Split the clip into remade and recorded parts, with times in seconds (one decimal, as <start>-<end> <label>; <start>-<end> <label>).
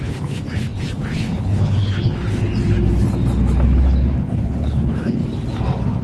0.0-2.5 remade; 2.5-4.2 recorded; 4.2-5.2 remade; 5.2-6.0 recorded